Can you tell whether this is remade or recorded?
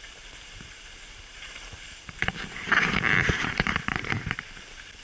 remade